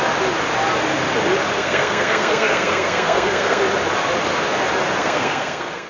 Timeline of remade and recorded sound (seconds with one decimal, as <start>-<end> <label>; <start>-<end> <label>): 0.0-1.6 recorded; 1.6-3.6 remade; 3.6-5.0 recorded; 5.0-5.9 remade